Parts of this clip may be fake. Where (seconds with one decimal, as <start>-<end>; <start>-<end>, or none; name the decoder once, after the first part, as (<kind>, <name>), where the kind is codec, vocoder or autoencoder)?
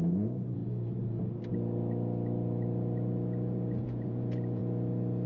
0.0-0.6 (vocoder, Vocos); 3.8-4.6